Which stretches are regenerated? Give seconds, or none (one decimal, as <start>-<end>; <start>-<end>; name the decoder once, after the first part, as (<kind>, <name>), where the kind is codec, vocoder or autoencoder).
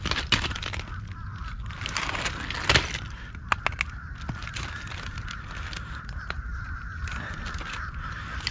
4.4-7.4 (vocoder, BigVGAN v2)